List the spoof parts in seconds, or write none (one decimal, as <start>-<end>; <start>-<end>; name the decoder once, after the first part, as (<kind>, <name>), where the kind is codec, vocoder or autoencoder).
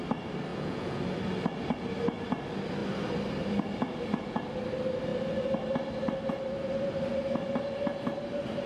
0.5-1.0 (vocoder, Vocos)